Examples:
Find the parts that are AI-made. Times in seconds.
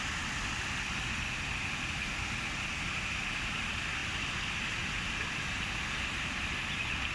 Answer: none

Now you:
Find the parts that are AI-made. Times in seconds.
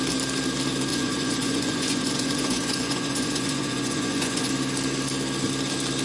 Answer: 0.9-4.5 (vocoder, Vocos)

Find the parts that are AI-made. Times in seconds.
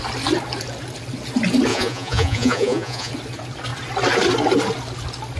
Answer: 1.7-3.1 (vocoder, Vocos)